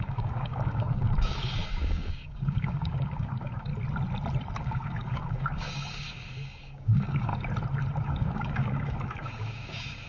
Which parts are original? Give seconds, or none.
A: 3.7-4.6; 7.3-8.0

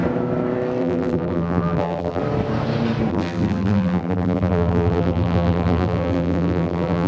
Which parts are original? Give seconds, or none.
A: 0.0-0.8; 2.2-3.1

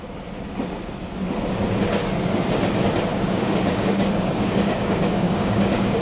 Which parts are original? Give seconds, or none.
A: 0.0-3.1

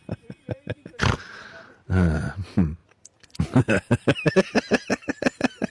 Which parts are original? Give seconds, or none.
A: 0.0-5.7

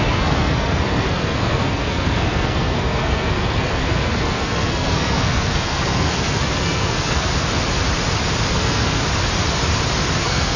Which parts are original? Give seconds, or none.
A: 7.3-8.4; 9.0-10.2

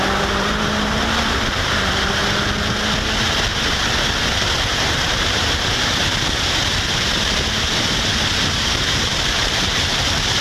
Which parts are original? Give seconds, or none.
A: 2.2-4.2

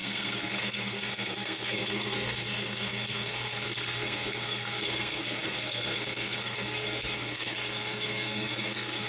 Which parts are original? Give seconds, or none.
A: none